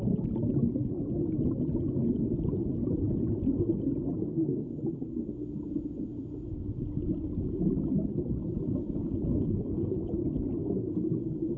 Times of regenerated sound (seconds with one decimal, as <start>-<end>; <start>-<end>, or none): 9.0-10.1